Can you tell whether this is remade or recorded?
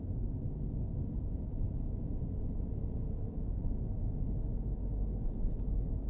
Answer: recorded